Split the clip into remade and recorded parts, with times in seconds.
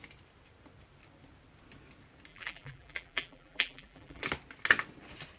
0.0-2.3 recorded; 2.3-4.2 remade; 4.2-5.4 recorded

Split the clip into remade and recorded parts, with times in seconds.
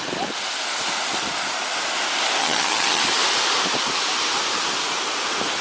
0.0-2.4 recorded; 2.4-3.0 remade; 3.0-5.6 recorded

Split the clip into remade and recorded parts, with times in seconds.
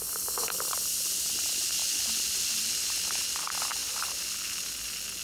0.0-5.2 recorded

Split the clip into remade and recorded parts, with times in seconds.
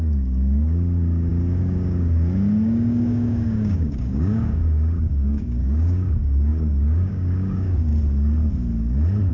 0.0-7.9 remade; 7.9-9.3 recorded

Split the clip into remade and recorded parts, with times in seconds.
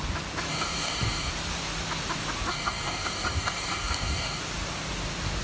0.0-0.5 recorded; 0.5-1.3 remade; 1.3-2.5 recorded; 2.5-4.4 remade; 4.4-5.4 recorded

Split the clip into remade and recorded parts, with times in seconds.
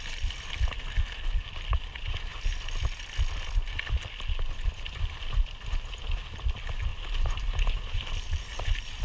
0.0-6.9 recorded; 6.9-9.0 remade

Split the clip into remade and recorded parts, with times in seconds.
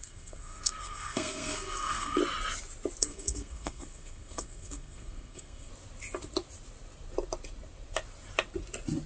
0.0-2.2 remade; 2.2-3.0 recorded; 3.0-5.7 remade; 5.7-9.1 recorded